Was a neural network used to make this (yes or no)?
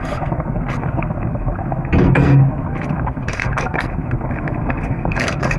yes